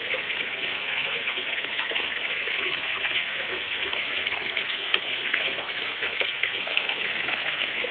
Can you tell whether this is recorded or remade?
remade